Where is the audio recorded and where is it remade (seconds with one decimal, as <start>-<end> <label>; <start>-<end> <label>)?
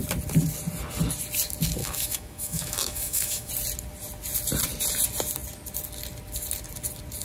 0.0-1.8 recorded; 1.8-3.5 remade; 3.5-7.2 recorded